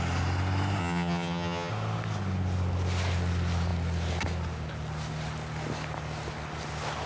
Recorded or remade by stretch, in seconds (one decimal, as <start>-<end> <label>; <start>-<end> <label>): 0.0-0.8 recorded; 0.8-1.7 remade; 1.7-7.1 recorded